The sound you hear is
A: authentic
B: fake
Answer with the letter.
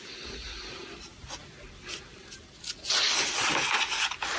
A